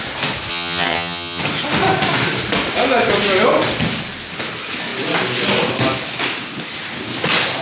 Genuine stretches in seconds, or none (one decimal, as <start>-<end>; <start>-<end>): 0.0-0.5; 1.4-7.6